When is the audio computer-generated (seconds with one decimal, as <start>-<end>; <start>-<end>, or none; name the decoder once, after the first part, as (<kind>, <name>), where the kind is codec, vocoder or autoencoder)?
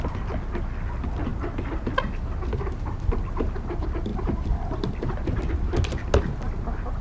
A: 4.1-5.4 (vocoder, BigVGAN v2)